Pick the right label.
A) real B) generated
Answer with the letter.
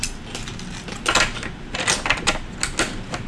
A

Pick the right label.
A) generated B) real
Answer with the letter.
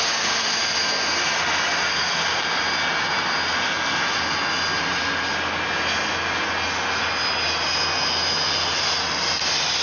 B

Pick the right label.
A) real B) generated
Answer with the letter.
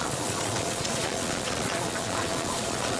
B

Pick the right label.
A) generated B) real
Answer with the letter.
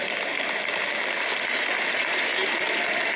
B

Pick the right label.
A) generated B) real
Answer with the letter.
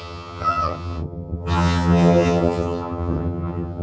A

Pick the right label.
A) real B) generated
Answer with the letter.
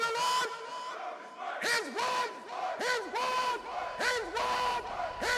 B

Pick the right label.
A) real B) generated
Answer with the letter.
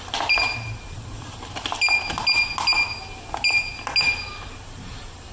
A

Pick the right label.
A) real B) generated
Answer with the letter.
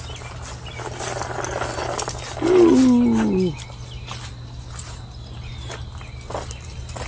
A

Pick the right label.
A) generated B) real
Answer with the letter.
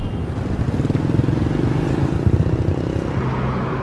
B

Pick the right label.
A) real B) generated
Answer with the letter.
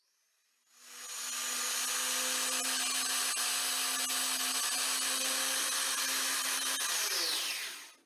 A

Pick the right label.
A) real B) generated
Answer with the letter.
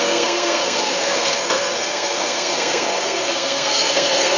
B